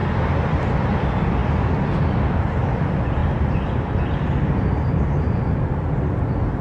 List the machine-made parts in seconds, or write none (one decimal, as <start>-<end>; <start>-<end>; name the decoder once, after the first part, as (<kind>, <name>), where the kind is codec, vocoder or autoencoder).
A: none